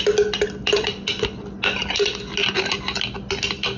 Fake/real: real